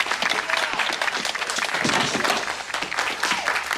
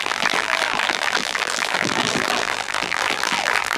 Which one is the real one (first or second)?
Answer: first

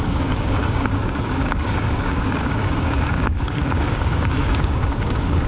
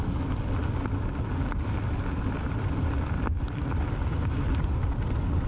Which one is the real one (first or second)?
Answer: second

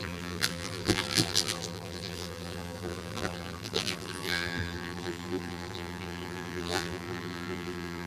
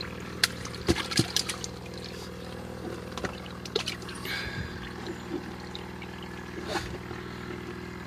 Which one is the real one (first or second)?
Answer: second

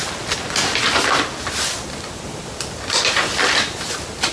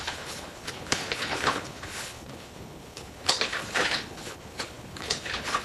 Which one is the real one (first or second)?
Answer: first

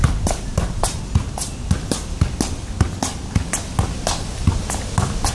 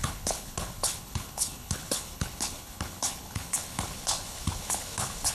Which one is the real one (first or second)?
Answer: first